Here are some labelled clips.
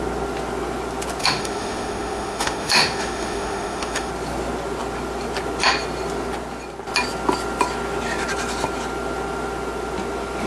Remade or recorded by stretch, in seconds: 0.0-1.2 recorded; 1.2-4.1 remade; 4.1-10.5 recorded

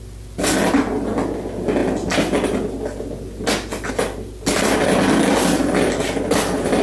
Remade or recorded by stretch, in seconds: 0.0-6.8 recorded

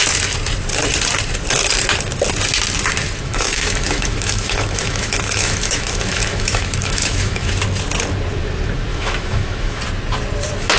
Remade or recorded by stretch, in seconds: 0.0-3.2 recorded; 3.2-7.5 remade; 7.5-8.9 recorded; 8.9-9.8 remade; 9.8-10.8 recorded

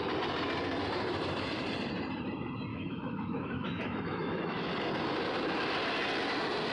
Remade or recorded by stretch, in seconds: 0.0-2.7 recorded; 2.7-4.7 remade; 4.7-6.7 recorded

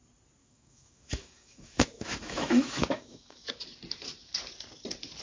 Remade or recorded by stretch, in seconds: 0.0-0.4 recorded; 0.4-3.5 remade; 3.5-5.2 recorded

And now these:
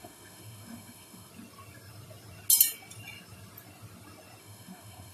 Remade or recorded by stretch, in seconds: 0.0-1.3 remade; 1.3-4.4 recorded; 4.4-5.1 remade

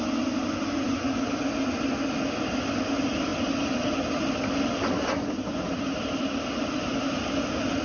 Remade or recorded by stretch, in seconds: 0.0-7.8 recorded